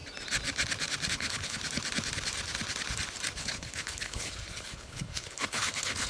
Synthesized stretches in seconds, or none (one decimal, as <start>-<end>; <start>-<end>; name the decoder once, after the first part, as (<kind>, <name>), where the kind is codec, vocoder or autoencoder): 1.1-1.6 (codec, HILCodec); 3.4-6.1

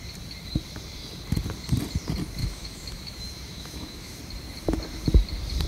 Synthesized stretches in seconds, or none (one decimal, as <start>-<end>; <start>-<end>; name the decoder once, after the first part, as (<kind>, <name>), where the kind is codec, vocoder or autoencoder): 2.4-4.2 (autoencoder, DAC-VAE)